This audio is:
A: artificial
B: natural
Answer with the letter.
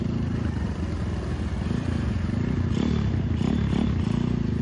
B